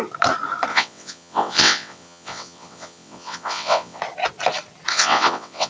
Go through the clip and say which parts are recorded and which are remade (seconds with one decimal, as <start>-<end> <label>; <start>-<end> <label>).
0.0-0.7 recorded; 0.7-4.0 remade; 4.0-4.9 recorded; 4.9-5.7 remade